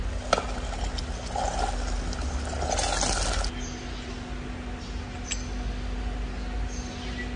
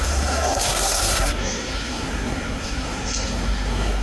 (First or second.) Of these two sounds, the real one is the first